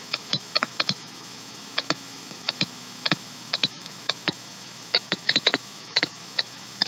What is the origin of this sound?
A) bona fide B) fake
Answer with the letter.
B